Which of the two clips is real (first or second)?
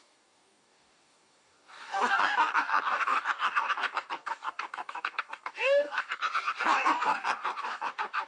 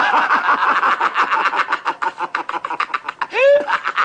second